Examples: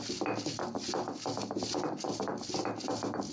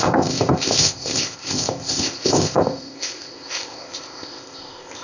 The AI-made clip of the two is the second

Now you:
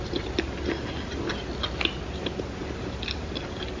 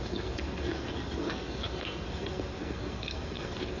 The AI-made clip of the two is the second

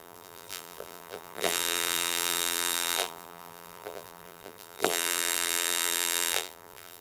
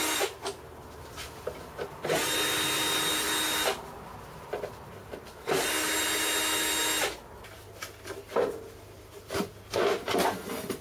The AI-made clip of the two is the first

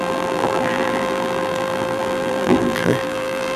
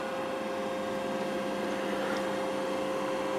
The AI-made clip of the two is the first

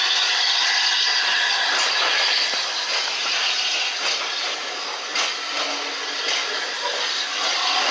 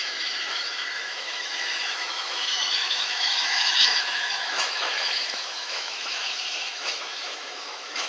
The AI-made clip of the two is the second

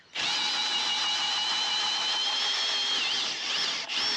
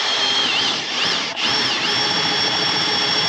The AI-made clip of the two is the second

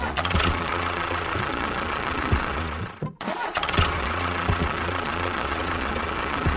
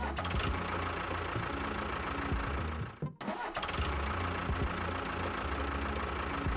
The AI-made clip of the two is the first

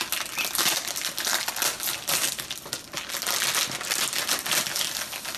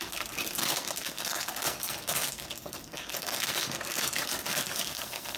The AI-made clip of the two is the second